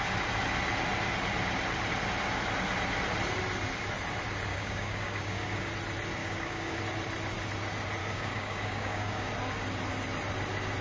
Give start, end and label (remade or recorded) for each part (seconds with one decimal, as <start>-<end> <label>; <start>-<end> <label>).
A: 0.0-4.5 recorded; 4.5-5.7 remade; 5.7-6.2 recorded; 6.2-6.8 remade; 6.8-8.0 recorded; 8.0-9.3 remade; 9.3-10.8 recorded